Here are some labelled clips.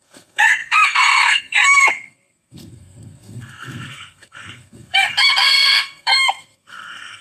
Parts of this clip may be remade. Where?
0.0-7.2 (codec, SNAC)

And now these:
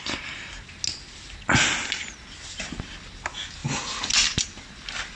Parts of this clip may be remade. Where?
none

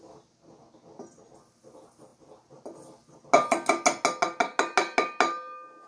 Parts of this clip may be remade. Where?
none